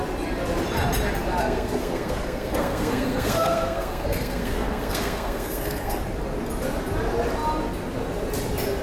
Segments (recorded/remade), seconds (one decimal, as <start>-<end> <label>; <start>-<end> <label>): 0.0-1.4 recorded; 1.4-6.0 remade; 6.0-8.8 recorded